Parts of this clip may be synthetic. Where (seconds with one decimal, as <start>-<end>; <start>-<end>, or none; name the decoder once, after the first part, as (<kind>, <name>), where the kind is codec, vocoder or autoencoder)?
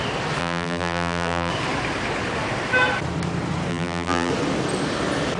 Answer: 0.4-1.5 (vocoder, BigVGAN v2); 3.7-4.3